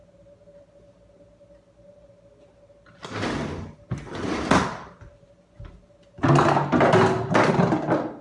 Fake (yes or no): no